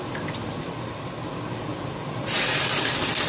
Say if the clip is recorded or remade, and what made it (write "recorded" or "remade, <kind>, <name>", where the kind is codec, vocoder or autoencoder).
recorded